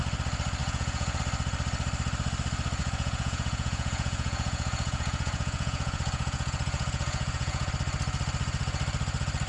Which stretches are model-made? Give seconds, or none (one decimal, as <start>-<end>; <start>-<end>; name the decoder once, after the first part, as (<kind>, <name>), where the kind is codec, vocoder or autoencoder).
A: 0.6-1.2 (vocoder, Vocos); 2.8-7.7